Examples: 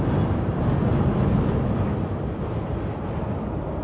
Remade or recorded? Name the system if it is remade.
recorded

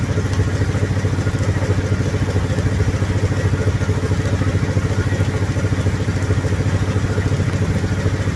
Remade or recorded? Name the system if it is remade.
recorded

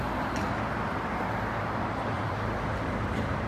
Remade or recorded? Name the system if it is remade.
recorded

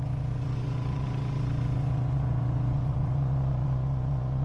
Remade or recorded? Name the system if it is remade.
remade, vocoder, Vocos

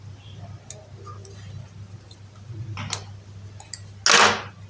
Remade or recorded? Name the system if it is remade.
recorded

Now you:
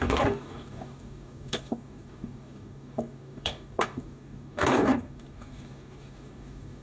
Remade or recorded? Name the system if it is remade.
remade, codec, DAC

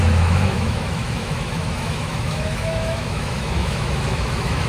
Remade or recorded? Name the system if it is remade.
remade, autoencoder, DAC-VAE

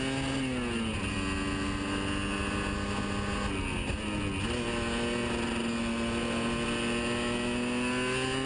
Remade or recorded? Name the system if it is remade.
recorded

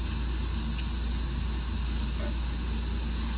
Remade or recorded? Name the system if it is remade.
recorded